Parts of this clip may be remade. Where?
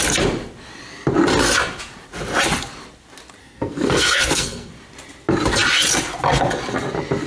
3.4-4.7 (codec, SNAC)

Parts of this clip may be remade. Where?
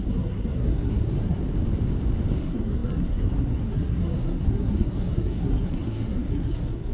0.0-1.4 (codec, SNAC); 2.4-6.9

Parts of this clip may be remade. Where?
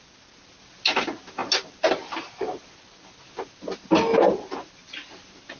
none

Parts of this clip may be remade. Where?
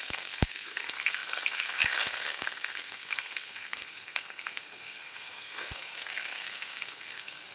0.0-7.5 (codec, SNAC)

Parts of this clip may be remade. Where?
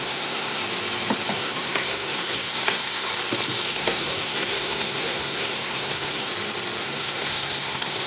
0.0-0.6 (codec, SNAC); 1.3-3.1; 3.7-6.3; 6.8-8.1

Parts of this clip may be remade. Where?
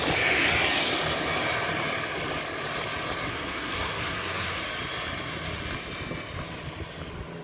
3.3-4.6 (codec, SNAC)